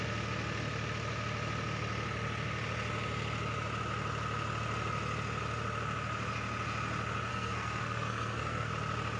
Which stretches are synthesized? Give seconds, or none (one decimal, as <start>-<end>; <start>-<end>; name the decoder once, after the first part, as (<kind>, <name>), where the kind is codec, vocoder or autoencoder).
7.3-8.7 (codec, SNAC)

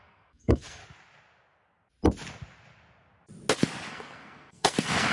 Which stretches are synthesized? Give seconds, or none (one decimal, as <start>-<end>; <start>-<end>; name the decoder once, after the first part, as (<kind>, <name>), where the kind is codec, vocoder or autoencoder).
0.0-0.8 (codec, SNAC); 3.9-5.1